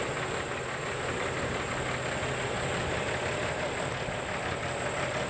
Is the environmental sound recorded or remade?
recorded